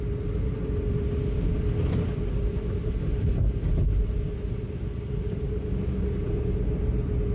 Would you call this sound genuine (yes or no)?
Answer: yes